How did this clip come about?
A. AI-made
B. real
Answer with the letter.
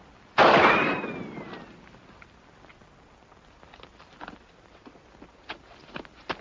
B